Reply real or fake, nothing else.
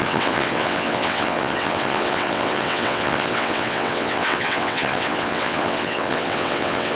fake